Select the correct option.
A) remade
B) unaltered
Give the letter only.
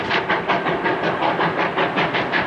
A